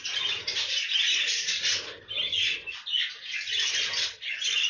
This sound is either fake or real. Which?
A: real